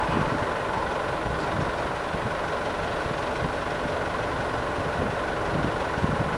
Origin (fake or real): real